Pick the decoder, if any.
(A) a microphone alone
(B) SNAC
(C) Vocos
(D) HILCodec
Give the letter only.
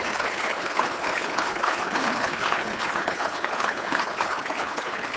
D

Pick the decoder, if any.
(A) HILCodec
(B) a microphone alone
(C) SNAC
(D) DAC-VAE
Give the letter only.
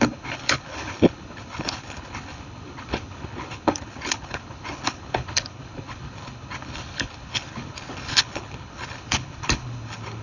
A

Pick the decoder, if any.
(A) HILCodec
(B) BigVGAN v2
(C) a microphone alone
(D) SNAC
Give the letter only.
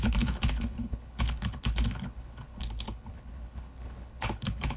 A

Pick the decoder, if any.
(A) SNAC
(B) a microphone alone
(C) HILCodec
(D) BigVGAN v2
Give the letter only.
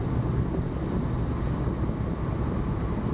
B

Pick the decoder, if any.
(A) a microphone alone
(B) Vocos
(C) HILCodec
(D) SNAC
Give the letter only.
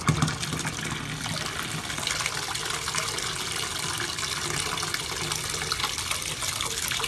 A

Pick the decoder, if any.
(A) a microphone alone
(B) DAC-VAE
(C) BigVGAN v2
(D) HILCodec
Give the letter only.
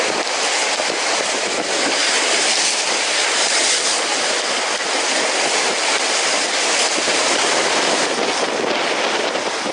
A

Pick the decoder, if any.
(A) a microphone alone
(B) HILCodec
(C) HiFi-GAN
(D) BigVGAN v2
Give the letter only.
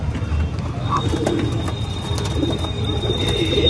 A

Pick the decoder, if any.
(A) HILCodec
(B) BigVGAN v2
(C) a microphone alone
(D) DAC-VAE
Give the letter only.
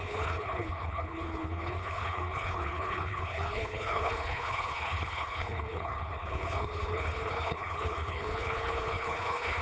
A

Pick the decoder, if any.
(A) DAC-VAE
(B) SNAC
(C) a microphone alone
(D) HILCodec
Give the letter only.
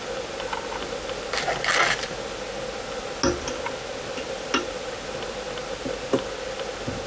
C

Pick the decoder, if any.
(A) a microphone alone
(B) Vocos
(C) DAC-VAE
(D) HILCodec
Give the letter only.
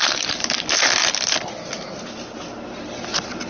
A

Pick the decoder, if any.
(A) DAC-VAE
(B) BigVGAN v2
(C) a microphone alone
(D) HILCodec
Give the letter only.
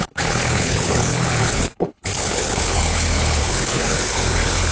D